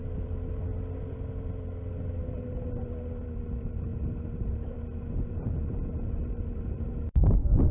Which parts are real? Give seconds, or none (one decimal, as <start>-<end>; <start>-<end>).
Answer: 0.7-1.3